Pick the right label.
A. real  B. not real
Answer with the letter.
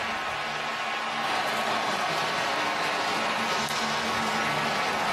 A